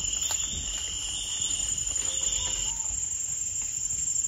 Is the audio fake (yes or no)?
no